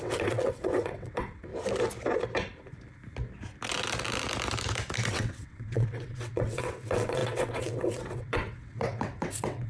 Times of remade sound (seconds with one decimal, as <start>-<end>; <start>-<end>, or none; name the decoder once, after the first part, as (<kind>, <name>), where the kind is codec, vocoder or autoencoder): 0.0-1.5 (vocoder, WaveNeXt); 5.1-9.7